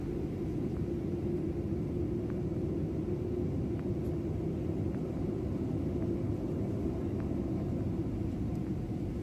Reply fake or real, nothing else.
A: real